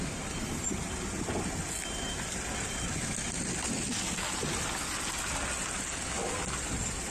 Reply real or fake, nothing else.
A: real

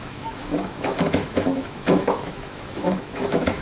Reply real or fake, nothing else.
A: fake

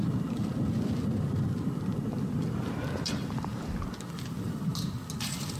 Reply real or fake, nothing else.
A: real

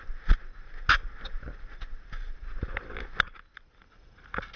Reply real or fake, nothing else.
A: real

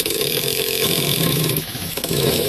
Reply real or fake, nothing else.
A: fake